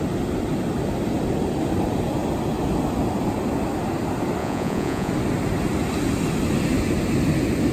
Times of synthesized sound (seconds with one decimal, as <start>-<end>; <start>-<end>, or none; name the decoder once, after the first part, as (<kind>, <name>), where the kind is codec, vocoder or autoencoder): 4.4-5.1 (vocoder, Vocos)